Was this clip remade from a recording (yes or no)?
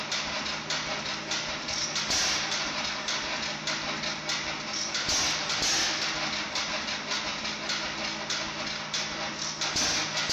no